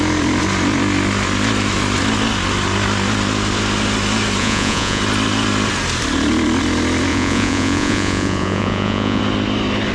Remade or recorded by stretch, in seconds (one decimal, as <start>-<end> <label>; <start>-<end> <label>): 0.0-4.4 recorded; 4.4-5.0 remade; 5.0-7.1 recorded; 7.1-9.2 remade; 9.2-9.9 recorded